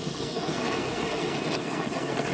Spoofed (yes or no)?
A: yes